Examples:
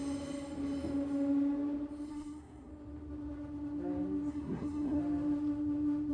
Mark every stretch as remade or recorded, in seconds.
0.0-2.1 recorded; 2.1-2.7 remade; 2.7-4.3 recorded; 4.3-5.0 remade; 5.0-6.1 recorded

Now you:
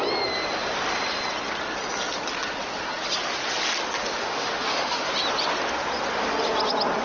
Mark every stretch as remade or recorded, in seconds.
0.0-4.0 recorded; 4.0-5.1 remade; 5.1-7.0 recorded

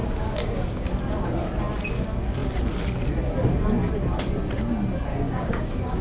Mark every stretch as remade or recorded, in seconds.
0.0-0.9 remade; 0.9-5.1 recorded; 5.1-6.0 remade

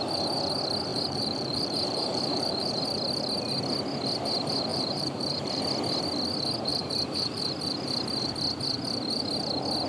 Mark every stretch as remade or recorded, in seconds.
0.0-0.9 recorded; 0.9-2.8 remade; 2.8-4.7 recorded; 4.7-5.6 remade; 5.6-6.7 recorded; 6.7-7.4 remade; 7.4-9.9 recorded

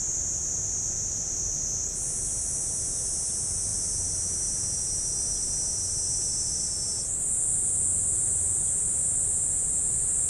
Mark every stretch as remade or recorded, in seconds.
0.0-7.9 recorded; 7.9-8.8 remade; 8.8-10.3 recorded

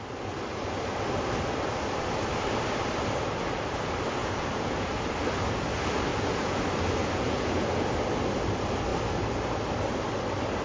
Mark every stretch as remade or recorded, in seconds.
0.0-4.2 recorded; 4.2-4.9 remade; 4.9-6.1 recorded; 6.1-6.6 remade; 6.6-7.0 recorded; 7.0-7.9 remade; 7.9-10.6 recorded

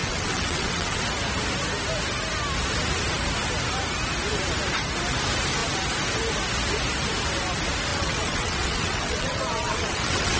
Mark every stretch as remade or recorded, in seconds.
0.0-1.0 remade; 1.0-7.9 recorded; 7.9-10.4 remade